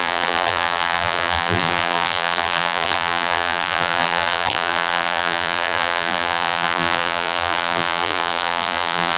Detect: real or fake fake